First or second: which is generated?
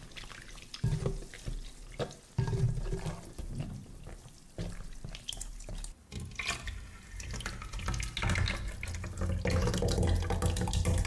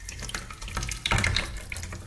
second